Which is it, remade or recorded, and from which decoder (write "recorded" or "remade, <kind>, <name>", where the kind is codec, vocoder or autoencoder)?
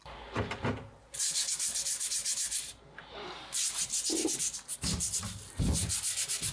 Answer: recorded